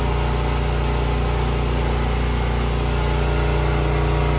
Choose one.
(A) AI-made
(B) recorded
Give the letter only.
B